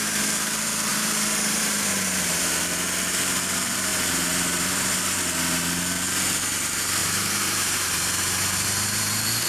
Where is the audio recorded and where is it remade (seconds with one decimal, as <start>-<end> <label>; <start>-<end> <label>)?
0.0-0.9 recorded; 0.9-2.4 remade; 2.4-3.9 recorded; 3.9-5.0 remade; 5.0-7.0 recorded; 7.0-9.5 remade